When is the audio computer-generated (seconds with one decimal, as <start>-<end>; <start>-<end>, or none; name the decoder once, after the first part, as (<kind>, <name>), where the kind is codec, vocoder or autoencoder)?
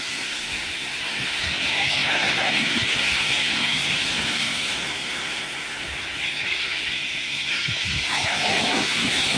0.0-9.4 (codec, SNAC)